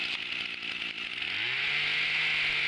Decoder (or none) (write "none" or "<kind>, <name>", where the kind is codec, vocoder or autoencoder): none